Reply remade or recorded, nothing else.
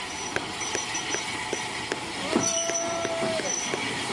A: recorded